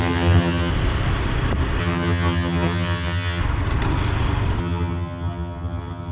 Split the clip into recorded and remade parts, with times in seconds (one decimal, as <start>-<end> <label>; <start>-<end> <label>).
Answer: 0.0-0.7 remade; 0.7-1.8 recorded; 1.8-3.4 remade; 3.4-4.6 recorded; 4.6-6.1 remade